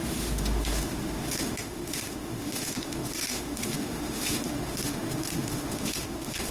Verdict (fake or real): fake